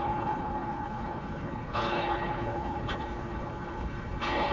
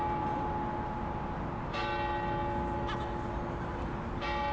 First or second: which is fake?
first